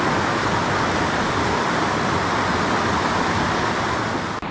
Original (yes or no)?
yes